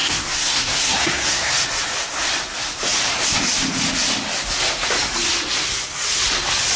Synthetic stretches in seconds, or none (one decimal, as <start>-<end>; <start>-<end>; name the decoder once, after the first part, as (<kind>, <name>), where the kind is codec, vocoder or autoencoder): 0.0-1.5 (codec, SNAC)